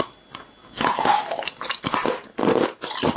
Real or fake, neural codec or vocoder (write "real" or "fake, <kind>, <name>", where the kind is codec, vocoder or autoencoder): real